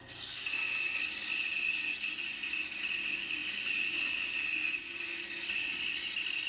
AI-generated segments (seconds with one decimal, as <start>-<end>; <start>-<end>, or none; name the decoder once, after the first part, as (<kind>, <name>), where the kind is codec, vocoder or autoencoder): none